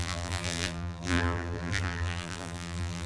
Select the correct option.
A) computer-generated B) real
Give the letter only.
A